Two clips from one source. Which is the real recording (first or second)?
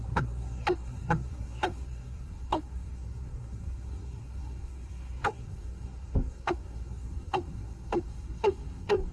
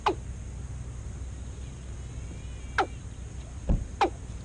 second